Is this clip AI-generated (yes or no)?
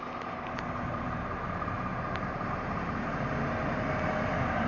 no